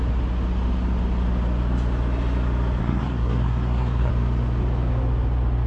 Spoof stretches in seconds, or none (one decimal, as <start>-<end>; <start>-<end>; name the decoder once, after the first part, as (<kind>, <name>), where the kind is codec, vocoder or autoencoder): 2.8-4.1 (codec, SNAC)